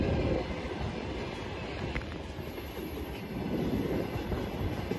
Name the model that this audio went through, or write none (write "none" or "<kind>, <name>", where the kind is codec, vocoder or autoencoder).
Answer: none